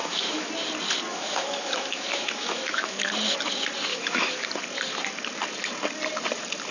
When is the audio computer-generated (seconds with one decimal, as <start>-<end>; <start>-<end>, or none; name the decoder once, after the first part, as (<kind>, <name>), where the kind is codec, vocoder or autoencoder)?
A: 0.0-0.5 (autoencoder, DAC-VAE); 1.1-3.1; 3.9-4.5